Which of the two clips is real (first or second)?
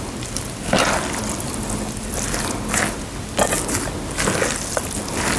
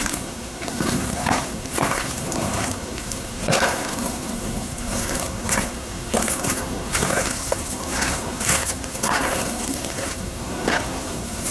first